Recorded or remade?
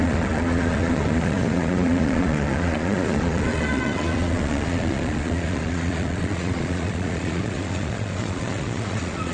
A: remade